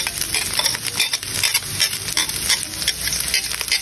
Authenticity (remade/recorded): recorded